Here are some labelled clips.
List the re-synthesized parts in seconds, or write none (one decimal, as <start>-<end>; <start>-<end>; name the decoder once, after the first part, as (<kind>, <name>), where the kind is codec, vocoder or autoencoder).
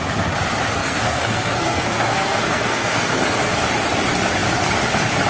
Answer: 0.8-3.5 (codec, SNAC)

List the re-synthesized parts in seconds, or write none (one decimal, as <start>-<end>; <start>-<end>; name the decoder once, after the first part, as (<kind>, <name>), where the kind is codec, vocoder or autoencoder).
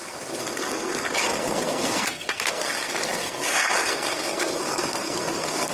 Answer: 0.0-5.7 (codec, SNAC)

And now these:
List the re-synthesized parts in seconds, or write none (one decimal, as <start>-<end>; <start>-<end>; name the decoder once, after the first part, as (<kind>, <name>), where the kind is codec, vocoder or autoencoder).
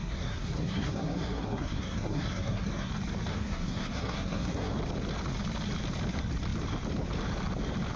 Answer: 0.0-2.9 (codec, SNAC); 3.3-4.7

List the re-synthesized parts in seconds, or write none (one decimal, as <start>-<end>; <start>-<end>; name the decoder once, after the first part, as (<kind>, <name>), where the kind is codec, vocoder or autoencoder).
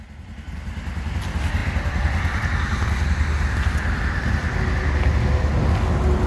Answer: 1.6-4.6 (vocoder, BigVGAN v2)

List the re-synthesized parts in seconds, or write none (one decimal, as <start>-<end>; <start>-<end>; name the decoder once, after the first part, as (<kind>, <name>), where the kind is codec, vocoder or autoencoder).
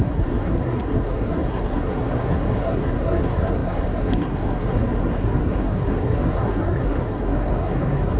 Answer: 0.0-8.2 (codec, SNAC)